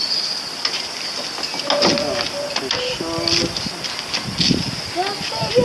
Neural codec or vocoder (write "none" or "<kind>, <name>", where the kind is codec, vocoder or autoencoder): none